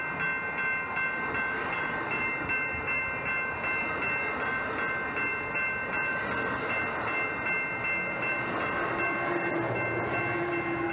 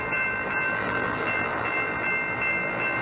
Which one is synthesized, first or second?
second